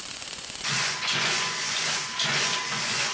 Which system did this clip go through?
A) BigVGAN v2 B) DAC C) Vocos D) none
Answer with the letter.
C